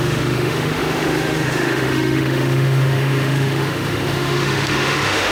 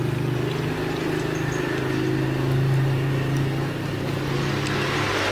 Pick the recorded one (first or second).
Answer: second